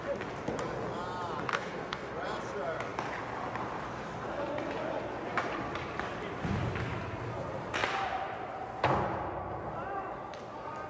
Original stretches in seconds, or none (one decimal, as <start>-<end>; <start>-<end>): 0.0-1.5; 2.1-10.9